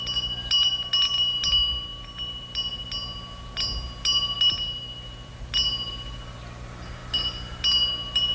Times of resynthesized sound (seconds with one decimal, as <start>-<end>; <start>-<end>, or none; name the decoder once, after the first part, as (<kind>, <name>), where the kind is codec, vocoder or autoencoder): none